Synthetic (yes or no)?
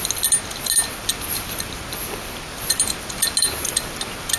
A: no